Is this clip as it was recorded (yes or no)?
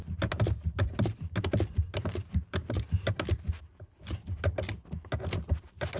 yes